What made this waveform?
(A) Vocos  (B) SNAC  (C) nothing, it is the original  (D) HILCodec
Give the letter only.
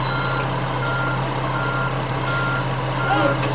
C